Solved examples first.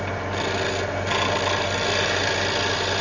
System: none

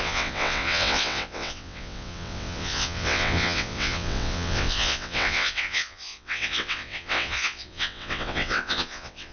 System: vocoder, WaveNeXt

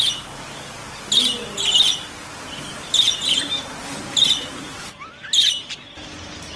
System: none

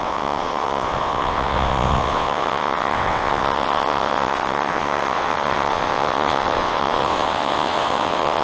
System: vocoder, WaveNeXt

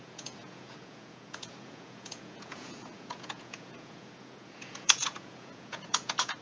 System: vocoder, Vocos